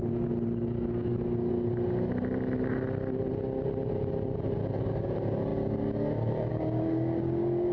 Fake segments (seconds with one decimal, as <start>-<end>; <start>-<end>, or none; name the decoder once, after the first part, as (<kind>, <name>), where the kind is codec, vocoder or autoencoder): 0.0-1.5 (codec, DAC); 4.8-7.7